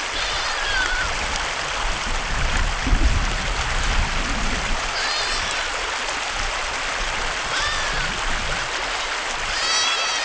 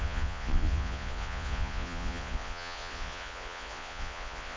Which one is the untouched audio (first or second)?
first